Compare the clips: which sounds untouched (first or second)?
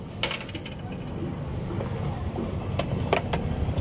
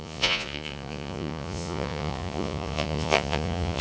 first